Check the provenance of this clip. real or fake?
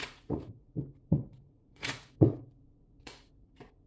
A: fake